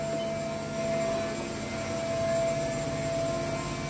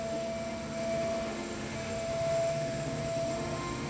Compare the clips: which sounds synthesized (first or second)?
second